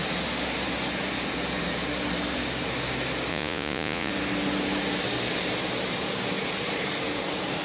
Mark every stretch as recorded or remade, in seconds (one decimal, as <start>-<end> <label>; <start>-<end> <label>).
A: 0.0-3.3 recorded; 3.3-4.1 remade; 4.1-7.6 recorded